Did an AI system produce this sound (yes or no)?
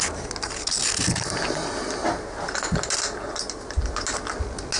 no